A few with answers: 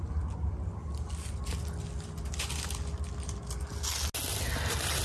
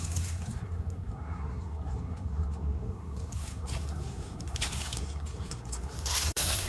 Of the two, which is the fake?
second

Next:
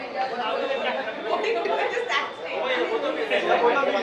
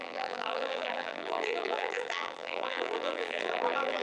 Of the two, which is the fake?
second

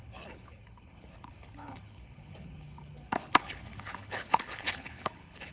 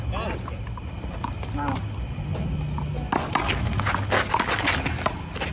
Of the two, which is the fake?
first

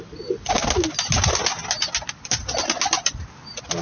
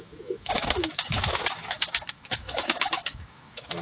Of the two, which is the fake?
second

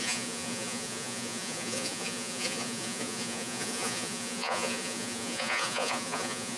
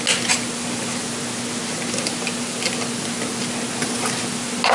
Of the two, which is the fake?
first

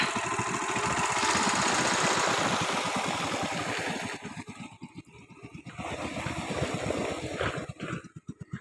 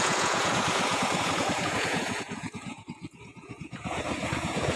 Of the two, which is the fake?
second